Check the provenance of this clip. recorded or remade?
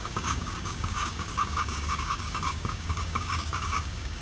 remade